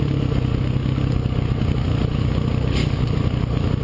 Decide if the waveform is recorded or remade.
recorded